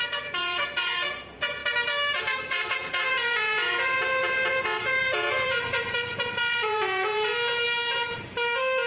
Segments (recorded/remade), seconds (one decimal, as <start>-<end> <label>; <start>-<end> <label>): 0.0-1.6 remade; 1.6-2.2 recorded; 2.2-7.3 remade; 7.3-8.9 recorded